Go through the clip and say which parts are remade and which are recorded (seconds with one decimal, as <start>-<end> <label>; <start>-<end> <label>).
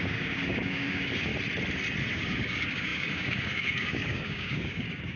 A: 0.0-1.3 remade; 1.3-2.1 recorded; 2.1-5.2 remade